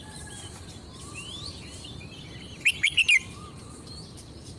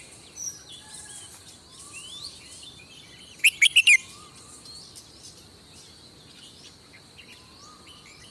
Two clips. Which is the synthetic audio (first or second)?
first